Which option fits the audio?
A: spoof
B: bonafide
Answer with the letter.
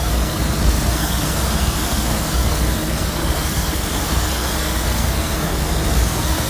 A